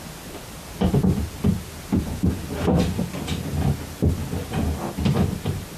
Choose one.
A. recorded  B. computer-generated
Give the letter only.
A